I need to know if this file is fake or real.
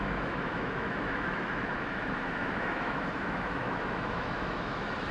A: fake